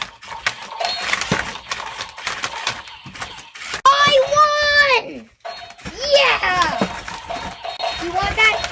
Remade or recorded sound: recorded